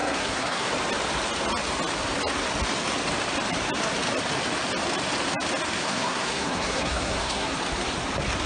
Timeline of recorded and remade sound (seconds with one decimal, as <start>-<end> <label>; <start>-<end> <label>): 0.0-0.7 remade; 0.7-5.8 recorded; 5.8-7.5 remade; 7.5-8.5 recorded